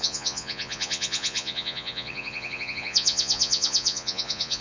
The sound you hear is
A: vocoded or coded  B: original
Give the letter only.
A